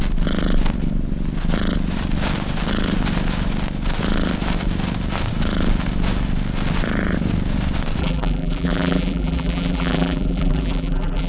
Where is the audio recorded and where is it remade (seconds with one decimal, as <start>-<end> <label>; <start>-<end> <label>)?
0.0-8.0 recorded; 8.0-11.3 remade